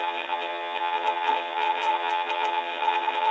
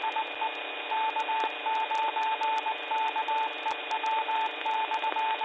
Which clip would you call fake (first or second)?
first